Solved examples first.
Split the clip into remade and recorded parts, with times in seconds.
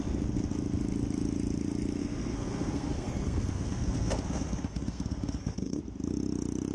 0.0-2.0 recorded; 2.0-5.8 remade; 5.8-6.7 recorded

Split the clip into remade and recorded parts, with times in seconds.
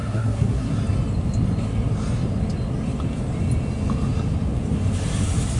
0.0-0.7 remade; 0.7-5.6 recorded